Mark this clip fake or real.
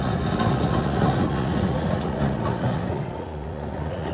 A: fake